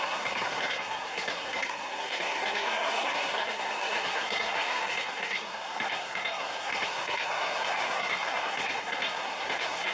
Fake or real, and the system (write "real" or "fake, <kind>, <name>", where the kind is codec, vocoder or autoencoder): fake, codec, SNAC